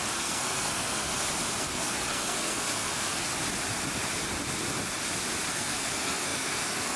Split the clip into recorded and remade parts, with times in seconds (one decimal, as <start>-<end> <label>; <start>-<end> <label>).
0.0-1.1 remade; 1.1-1.6 recorded; 1.6-3.3 remade; 3.3-5.5 recorded; 5.5-7.0 remade